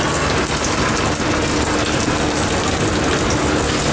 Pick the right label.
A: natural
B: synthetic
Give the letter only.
A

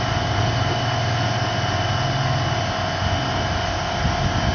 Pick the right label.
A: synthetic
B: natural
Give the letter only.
B